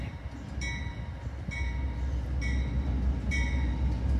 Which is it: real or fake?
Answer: real